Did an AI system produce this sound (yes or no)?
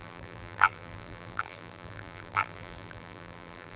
yes